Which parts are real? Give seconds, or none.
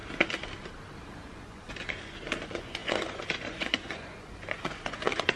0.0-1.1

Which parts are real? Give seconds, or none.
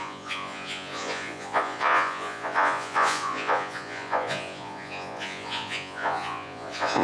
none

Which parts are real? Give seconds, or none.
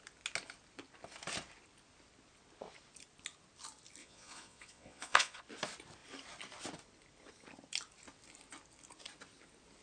0.0-4.0; 5.4-9.8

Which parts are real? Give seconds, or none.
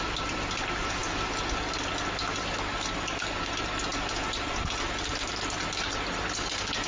0.0-6.9